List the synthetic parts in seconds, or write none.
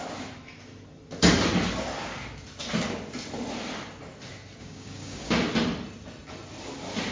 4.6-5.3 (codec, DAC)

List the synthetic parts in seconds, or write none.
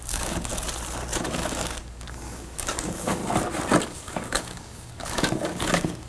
0.0-0.5 (codec, DAC); 1.2-3.2; 3.8-6.1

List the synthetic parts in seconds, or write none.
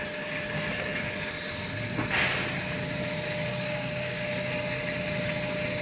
3.5-4.5 (codec, DAC)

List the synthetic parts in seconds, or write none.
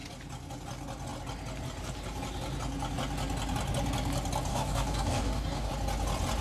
4.5-5.7 (codec, DAC)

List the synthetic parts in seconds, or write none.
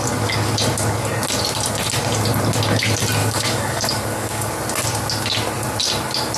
3.2-4.5 (codec, DAC)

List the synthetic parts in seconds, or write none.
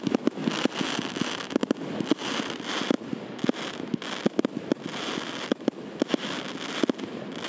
none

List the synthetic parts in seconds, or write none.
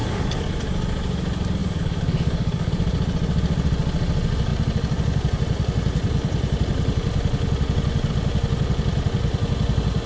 0.0-0.5 (codec, DAC); 1.6-2.7